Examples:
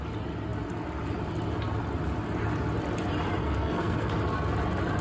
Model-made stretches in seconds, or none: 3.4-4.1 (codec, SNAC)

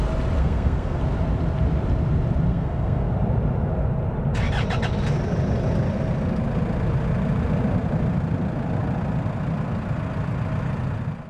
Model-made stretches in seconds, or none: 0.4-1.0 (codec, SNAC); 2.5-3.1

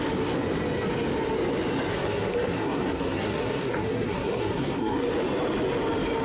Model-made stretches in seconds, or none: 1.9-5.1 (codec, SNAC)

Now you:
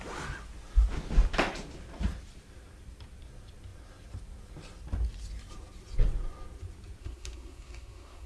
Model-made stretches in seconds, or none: 7.0-8.3 (codec, SNAC)